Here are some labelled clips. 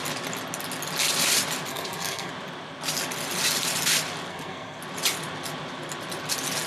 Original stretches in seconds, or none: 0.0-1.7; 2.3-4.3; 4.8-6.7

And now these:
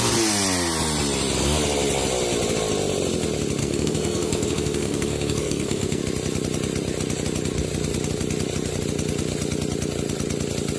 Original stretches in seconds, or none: 0.0-3.6; 6.0-10.8